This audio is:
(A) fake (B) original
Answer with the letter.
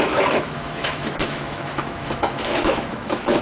A